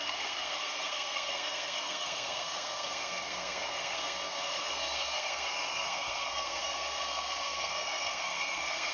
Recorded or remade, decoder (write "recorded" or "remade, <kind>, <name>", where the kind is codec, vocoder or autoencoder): remade, codec, SNAC